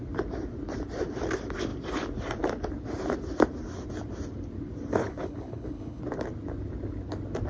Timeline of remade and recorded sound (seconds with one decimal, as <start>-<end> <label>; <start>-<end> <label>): 0.0-5.0 recorded; 5.0-6.0 remade; 6.0-7.5 recorded